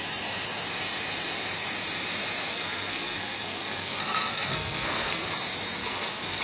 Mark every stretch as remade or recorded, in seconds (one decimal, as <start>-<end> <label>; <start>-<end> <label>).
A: 0.0-2.5 recorded; 2.5-5.3 remade; 5.3-5.8 recorded; 5.8-6.4 remade